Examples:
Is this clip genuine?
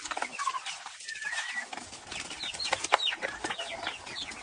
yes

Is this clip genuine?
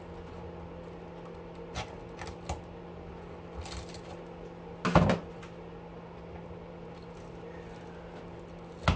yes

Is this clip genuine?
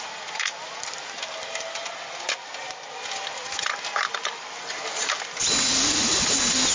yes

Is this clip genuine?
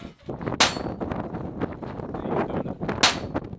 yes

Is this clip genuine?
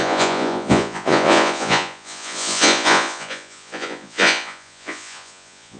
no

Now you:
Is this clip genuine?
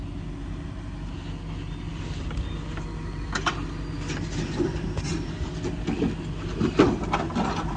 yes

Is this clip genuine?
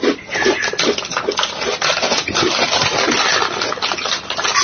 yes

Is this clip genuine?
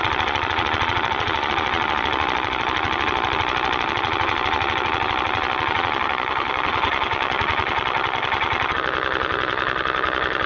no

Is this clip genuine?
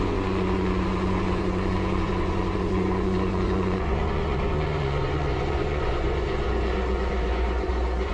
no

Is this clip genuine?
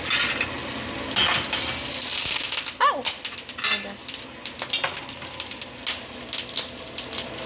yes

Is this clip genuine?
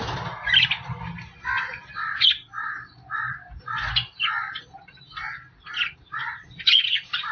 yes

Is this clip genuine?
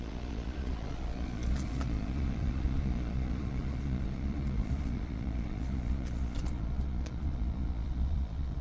no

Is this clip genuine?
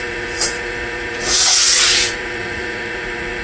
no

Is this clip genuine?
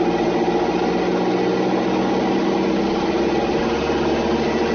yes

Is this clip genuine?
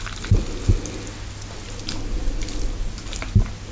yes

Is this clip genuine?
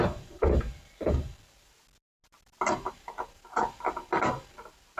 yes